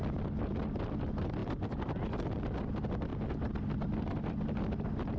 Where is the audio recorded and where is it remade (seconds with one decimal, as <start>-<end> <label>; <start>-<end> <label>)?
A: 0.0-5.2 recorded